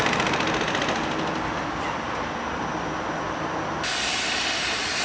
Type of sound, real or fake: real